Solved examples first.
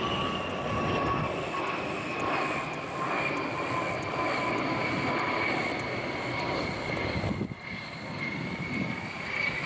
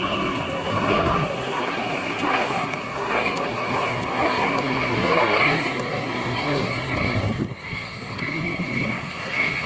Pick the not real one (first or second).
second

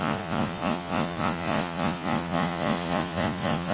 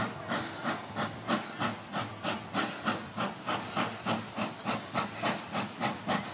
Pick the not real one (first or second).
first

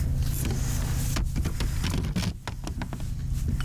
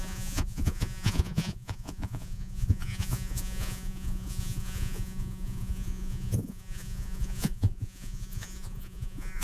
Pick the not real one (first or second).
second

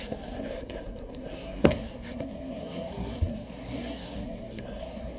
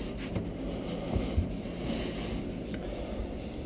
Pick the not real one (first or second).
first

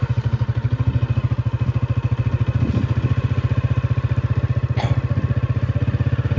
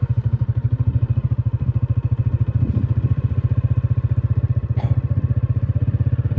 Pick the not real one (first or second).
second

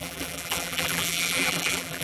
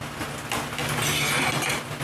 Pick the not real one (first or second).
first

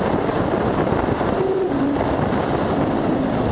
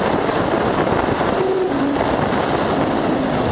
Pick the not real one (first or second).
first